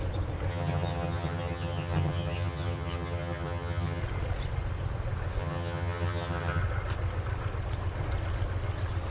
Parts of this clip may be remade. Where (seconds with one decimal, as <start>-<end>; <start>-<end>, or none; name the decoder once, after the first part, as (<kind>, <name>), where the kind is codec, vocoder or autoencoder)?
0.5-4.0 (vocoder, HiFi-GAN); 5.4-6.6